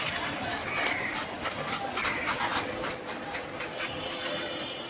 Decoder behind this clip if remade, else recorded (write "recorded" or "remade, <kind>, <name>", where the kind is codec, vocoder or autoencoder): recorded